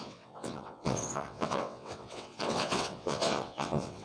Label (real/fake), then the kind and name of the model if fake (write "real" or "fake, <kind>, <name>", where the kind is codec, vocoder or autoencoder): fake, vocoder, WaveNeXt